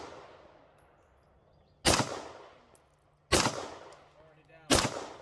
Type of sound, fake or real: real